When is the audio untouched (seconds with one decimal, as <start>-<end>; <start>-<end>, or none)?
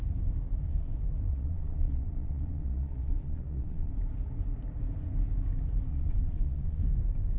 0.0-1.3; 3.9-5.9; 6.8-7.4